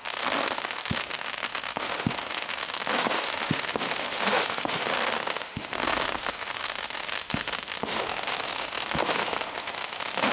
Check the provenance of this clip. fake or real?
fake